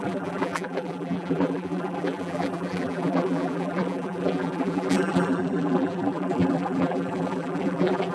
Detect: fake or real fake